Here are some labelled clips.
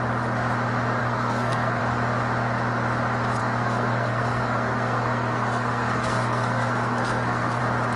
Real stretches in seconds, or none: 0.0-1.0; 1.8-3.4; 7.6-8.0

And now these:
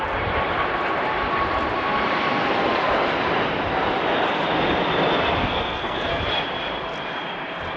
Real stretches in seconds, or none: 0.0-5.4; 6.2-7.8

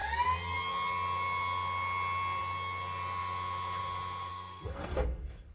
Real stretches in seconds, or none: 0.0-4.3